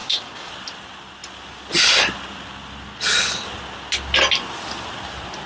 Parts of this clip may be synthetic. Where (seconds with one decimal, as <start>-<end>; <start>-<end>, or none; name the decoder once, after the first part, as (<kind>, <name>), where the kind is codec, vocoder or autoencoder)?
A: 0.0-0.5 (codec, DAC)